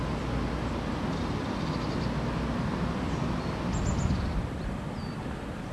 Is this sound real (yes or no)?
yes